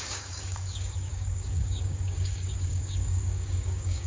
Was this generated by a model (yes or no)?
yes